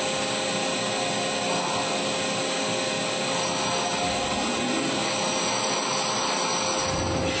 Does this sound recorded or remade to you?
recorded